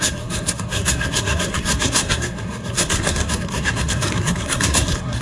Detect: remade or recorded remade